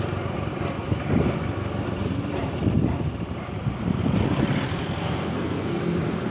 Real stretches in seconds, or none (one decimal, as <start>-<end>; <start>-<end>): 0.0-5.0; 5.8-6.3